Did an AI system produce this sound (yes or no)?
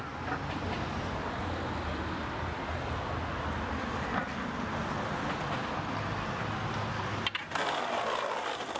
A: no